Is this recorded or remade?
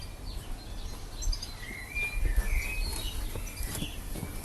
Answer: recorded